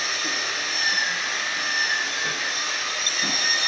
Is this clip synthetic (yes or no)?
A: no